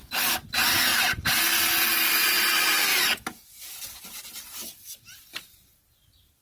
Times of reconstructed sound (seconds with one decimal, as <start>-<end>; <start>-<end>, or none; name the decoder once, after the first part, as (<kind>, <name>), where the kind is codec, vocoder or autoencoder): 2.9-3.8 (vocoder, Vocos)